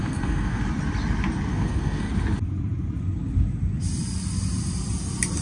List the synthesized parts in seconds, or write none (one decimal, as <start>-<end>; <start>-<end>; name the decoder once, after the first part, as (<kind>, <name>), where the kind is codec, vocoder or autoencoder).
0.0-0.6 (codec, SNAC); 1.5-2.1